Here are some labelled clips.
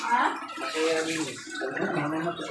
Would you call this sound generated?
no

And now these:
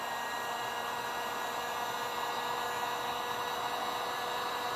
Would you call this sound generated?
no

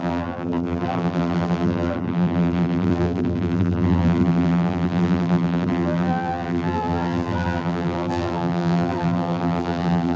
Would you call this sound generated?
yes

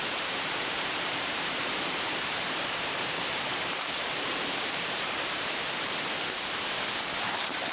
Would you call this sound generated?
yes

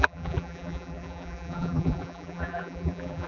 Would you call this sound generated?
yes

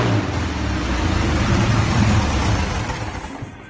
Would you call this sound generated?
no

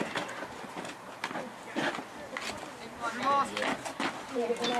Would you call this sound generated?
no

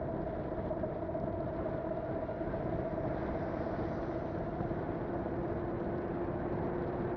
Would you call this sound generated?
no